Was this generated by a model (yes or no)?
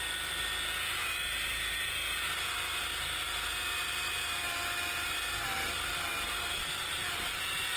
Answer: no